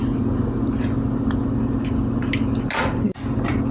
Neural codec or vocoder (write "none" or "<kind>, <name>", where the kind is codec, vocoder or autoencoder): none